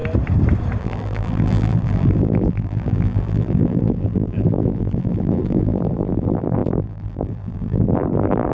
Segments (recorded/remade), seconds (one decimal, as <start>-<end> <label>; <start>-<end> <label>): 0.0-0.8 recorded; 0.8-8.5 remade